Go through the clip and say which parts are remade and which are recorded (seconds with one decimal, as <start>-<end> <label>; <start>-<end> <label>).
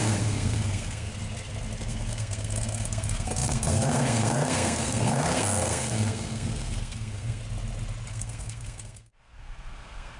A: 0.0-1.1 remade; 1.1-1.8 recorded; 1.8-7.4 remade; 7.4-8.1 recorded; 8.1-10.2 remade